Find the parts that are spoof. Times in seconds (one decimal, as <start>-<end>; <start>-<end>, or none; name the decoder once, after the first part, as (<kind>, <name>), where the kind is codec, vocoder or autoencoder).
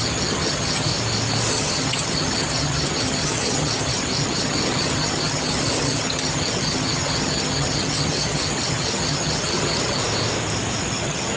0.0-0.9 (vocoder, HiFi-GAN); 1.5-10.0; 10.8-11.4